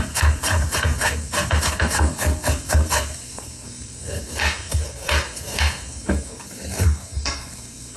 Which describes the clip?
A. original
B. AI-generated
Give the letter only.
B